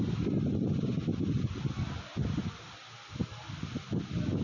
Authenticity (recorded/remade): recorded